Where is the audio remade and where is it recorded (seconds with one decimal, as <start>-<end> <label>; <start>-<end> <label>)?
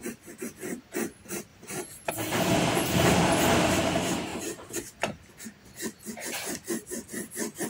0.0-1.5 recorded; 1.5-2.1 remade; 2.1-4.3 recorded; 4.3-5.0 remade; 5.0-7.7 recorded